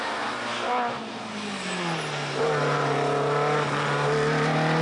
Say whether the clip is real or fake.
real